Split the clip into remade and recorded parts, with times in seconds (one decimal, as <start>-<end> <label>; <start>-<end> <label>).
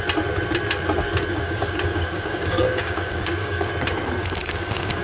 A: 0.0-1.3 recorded; 1.3-3.7 remade; 3.7-4.4 recorded; 4.4-5.0 remade